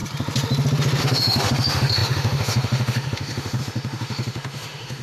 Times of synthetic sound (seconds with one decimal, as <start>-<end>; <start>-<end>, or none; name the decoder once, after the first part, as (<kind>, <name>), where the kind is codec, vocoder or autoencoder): 1.0-5.0 (autoencoder, DAC-VAE)